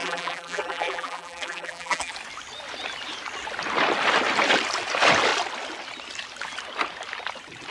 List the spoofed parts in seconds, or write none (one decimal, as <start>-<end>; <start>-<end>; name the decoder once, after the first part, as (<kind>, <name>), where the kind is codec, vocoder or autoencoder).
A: 0.0-2.1 (vocoder, BigVGAN v2)